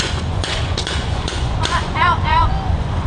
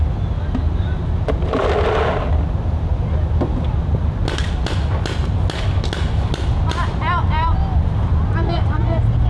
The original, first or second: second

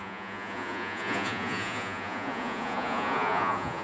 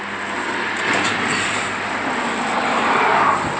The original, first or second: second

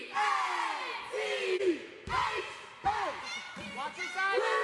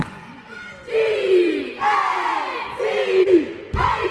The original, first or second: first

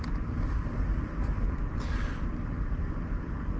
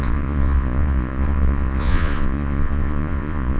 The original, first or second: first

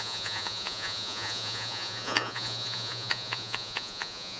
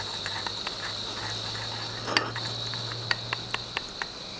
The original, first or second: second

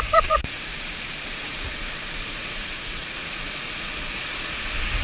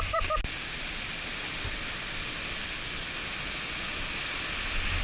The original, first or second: second